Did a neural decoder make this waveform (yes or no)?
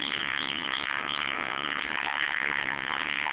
yes